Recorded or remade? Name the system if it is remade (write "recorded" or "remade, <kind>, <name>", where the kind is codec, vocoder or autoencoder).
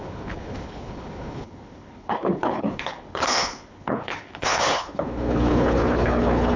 remade, codec, HILCodec